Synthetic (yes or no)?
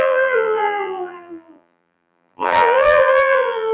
yes